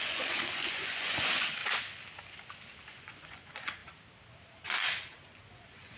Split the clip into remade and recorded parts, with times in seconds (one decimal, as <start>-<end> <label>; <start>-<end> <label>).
0.0-1.6 remade; 1.6-2.9 recorded; 2.9-3.8 remade; 3.8-5.3 recorded; 5.3-6.0 remade